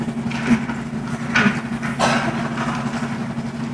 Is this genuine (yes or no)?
yes